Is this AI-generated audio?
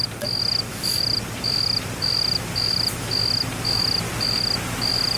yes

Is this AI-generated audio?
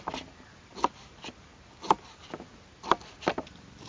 no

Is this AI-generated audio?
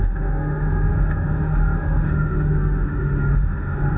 yes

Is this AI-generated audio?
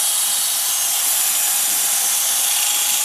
no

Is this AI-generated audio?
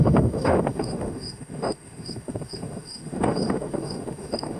yes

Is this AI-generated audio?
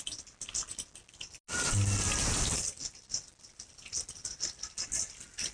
no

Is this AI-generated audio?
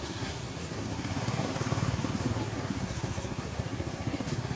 yes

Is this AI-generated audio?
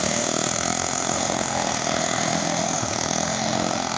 yes